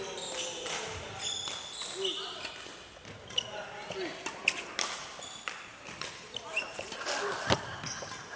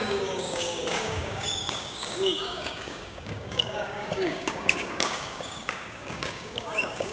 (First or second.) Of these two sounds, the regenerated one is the second